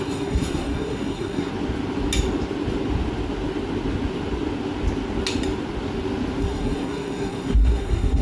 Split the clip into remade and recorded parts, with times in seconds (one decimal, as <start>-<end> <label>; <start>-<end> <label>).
0.0-1.5 remade; 1.5-6.4 recorded; 6.4-8.2 remade